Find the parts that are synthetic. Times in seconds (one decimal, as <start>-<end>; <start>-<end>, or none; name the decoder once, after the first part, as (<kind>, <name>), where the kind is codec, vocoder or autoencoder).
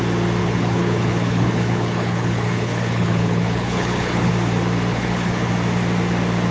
0.4-4.3 (codec, HILCodec); 4.9-5.5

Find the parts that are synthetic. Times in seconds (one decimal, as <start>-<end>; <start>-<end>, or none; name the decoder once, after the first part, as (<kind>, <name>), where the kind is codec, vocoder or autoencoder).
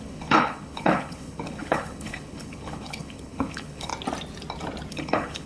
0.0-3.9 (codec, HILCodec); 4.9-5.5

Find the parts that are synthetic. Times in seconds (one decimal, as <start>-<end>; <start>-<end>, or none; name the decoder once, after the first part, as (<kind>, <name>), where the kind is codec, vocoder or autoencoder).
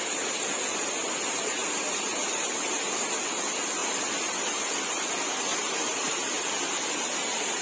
5.5-6.1 (vocoder, BigVGAN v2)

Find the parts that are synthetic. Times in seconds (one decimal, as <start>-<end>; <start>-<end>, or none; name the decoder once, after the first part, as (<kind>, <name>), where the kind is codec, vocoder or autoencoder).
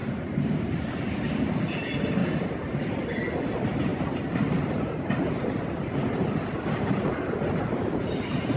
0.0-0.9 (vocoder, BigVGAN v2); 2.2-2.9; 3.9-5.3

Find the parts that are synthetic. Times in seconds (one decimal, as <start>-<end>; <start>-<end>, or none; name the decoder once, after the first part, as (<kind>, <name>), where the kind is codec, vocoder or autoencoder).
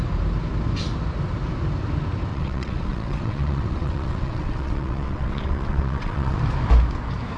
2.3-6.4 (vocoder, WaveNeXt)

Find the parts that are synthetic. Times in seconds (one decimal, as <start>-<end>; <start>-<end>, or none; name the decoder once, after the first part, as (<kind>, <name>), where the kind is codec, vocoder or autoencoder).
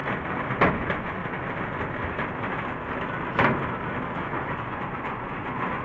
0.7-1.2 (vocoder, Vocos); 4.1-5.8